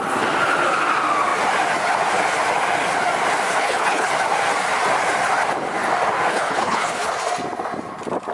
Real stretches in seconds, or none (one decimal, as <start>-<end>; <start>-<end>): 0.0-3.6; 4.1-6.3; 7.1-8.3